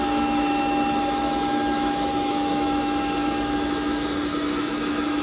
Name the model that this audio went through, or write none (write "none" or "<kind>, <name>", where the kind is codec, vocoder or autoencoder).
autoencoder, DAC-VAE